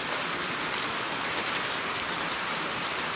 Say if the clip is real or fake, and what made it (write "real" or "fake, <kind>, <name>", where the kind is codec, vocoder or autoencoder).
real